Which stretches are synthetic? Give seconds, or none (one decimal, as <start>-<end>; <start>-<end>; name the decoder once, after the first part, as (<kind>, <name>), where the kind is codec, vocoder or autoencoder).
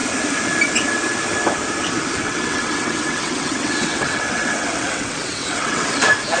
2.2-6.0 (vocoder, WaveNeXt)